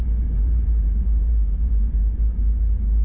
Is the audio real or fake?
real